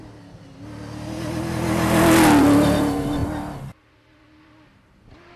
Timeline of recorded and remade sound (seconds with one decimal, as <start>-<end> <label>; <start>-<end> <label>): 0.0-2.4 recorded; 2.4-3.2 remade; 3.2-4.4 recorded; 4.4-5.4 remade